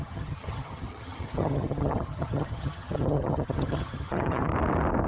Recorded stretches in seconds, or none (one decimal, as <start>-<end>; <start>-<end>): 4.5-5.1